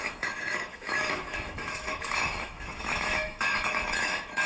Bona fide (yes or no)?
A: no